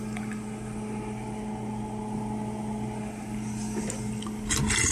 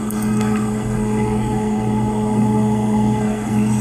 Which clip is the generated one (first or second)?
second